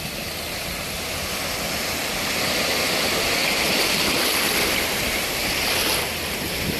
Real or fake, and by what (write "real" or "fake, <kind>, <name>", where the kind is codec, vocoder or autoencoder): real